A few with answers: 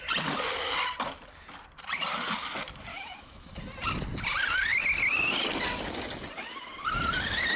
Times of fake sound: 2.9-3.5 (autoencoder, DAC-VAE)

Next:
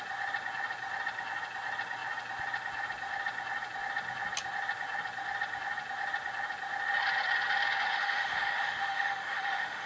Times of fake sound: 7.9-9.9 (autoencoder, DAC-VAE)

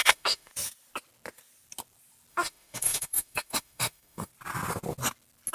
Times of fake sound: 0.0-0.5 (autoencoder, DAC-VAE); 2.3-4.3

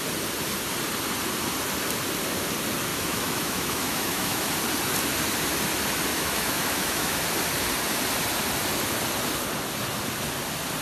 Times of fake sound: 2.9-4.5 (autoencoder, DAC-VAE); 6.1-7.2

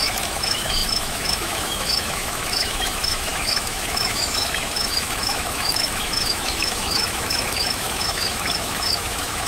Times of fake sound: 0.0-9.5 (autoencoder, DAC-VAE)